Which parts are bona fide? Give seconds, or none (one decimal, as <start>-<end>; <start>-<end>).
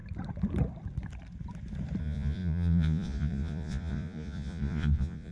0.0-2.0